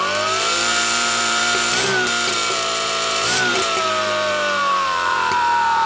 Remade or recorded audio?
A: remade